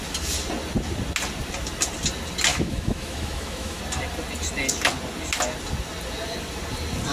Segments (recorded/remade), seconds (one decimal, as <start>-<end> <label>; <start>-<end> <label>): 0.0-2.5 recorded; 2.5-3.8 remade; 3.8-7.1 recorded